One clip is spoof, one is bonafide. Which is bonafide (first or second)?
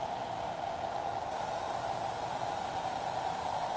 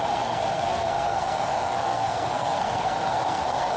first